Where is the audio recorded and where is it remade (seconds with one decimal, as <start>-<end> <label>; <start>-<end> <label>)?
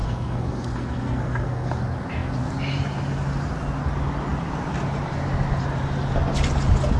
0.0-1.8 remade; 1.8-7.0 recorded